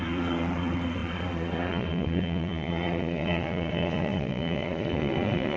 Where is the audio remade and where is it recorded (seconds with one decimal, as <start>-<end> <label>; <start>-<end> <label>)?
0.0-5.6 remade